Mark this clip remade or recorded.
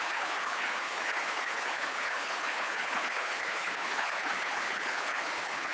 remade